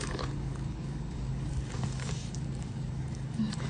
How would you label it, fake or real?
fake